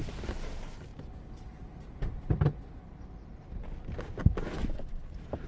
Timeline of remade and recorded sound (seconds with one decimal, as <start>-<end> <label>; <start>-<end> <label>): 0.0-5.5 recorded